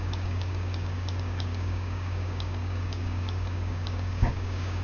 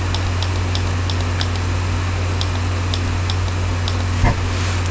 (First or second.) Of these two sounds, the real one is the second